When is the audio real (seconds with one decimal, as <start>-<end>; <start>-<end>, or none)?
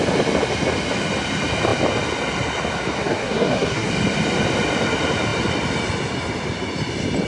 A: 0.0-3.0; 3.9-7.3